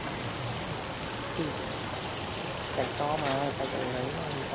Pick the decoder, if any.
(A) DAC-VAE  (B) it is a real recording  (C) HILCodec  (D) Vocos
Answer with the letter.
B